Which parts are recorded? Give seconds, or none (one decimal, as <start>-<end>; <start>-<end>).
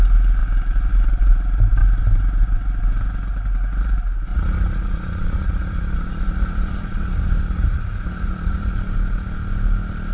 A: 0.0-4.3; 8.7-10.1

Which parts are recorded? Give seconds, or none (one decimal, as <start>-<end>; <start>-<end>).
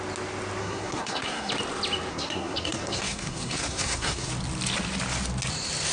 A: 0.0-0.6; 1.5-2.1; 4.3-5.9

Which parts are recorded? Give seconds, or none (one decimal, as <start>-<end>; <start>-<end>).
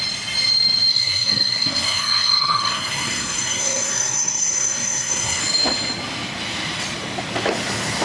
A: 0.0-0.9; 5.4-8.0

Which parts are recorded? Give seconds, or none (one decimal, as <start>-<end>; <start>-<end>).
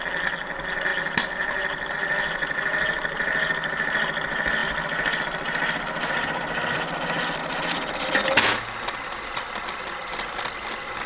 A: 0.0-11.1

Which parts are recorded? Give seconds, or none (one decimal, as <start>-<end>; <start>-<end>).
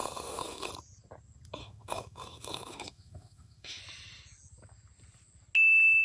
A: 0.7-1.6; 3.8-6.0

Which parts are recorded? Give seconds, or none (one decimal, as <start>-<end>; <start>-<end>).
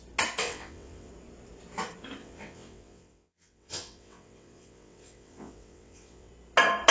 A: 0.0-0.4; 1.1-2.2; 6.3-6.9